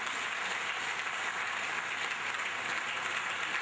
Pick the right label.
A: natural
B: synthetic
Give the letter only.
A